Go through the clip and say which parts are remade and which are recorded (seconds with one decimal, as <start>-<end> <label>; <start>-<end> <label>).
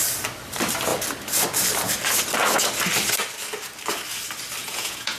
0.0-4.6 recorded; 4.6-5.2 remade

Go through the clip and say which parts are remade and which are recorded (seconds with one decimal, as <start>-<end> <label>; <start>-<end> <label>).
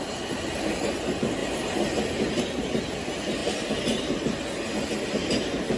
0.0-3.4 recorded; 3.4-4.4 remade; 4.4-5.8 recorded